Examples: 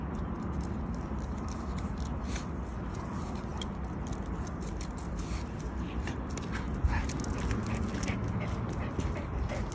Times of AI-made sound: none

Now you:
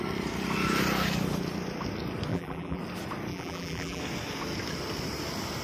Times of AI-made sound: 2.3-2.8 (vocoder, BigVGAN v2); 3.3-4.0